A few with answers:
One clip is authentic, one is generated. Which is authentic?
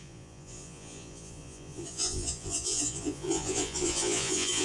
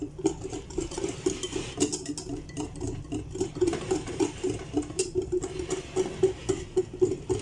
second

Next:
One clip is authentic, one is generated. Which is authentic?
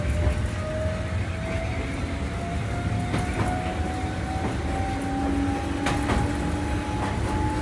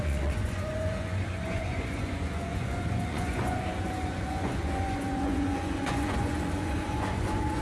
first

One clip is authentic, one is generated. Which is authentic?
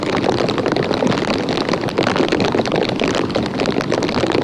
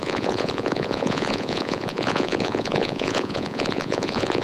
first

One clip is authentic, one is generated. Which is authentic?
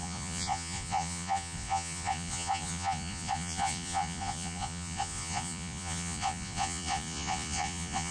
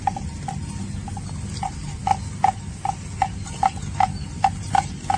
second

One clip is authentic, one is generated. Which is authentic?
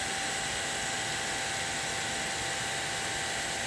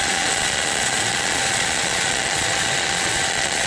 first